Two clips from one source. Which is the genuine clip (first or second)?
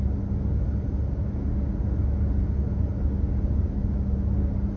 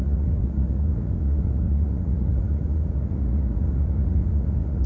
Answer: first